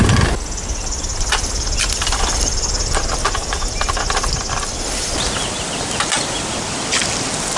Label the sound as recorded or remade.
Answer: recorded